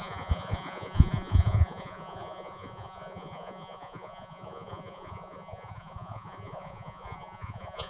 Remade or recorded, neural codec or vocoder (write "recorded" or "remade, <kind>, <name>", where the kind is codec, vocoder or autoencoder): remade, vocoder, Vocos